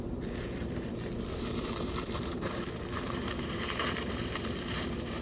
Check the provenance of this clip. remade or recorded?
remade